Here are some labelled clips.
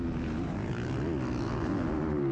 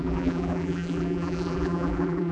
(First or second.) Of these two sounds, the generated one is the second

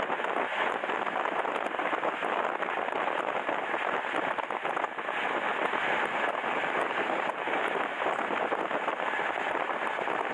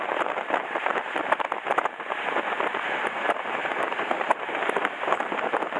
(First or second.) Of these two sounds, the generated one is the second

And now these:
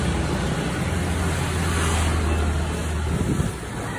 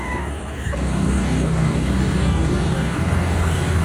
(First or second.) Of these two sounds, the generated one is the second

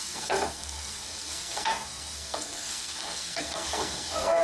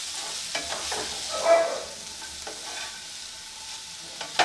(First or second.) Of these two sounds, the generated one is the first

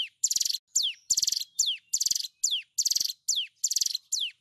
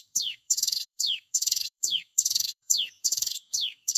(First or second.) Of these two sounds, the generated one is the second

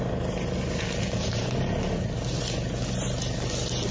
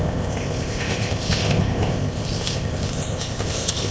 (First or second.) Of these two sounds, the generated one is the second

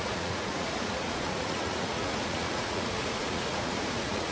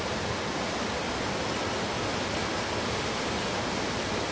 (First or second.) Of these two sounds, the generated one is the first